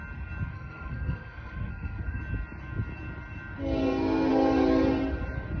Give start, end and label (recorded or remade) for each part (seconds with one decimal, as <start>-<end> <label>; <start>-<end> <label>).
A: 0.0-0.5 recorded; 0.5-2.2 remade; 2.2-3.6 recorded; 3.6-4.3 remade; 4.3-5.6 recorded